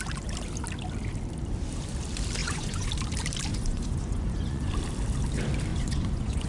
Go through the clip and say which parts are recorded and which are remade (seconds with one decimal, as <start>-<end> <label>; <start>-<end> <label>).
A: 0.0-2.4 recorded; 2.4-2.9 remade; 2.9-3.5 recorded; 3.5-4.7 remade; 4.7-5.7 recorded; 5.7-6.5 remade